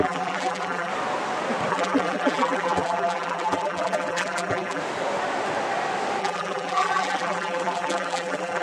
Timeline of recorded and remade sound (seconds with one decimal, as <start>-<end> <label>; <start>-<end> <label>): 0.0-0.9 remade; 0.9-1.7 recorded; 1.7-4.8 remade; 4.8-6.2 recorded; 6.2-8.6 remade